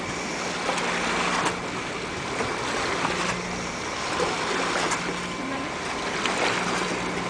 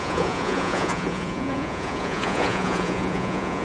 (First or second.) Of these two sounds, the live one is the first